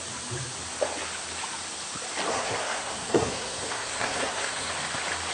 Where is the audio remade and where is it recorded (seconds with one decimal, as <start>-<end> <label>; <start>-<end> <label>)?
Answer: 0.0-2.3 recorded; 2.3-4.7 remade; 4.7-5.3 recorded